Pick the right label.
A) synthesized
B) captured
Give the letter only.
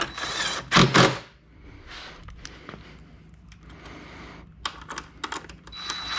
B